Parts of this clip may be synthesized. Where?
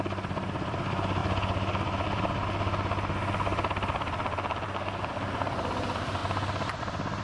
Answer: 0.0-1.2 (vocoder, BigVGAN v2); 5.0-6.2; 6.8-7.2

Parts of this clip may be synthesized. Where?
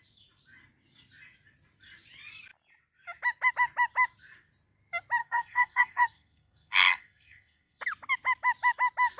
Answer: 5.2-7.8 (codec, SNAC)